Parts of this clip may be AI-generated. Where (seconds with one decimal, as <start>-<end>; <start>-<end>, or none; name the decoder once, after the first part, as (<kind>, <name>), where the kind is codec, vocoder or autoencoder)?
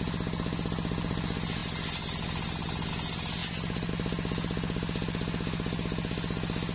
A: none